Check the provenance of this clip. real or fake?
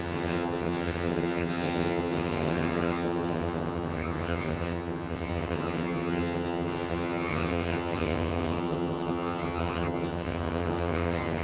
fake